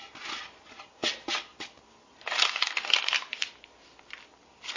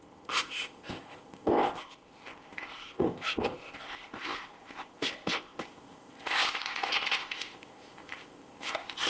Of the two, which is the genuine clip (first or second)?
first